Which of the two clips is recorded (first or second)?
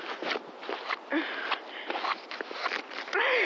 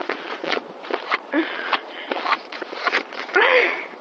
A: first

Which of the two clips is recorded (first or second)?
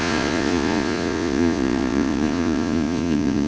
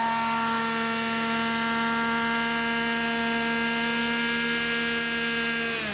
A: second